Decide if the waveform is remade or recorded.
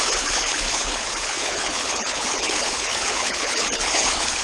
remade